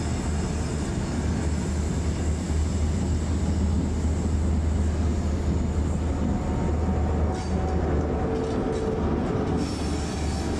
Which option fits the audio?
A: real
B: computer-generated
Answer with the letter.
A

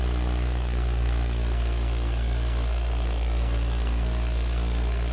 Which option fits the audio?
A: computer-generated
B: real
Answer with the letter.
A